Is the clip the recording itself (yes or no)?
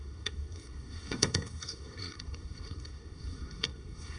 no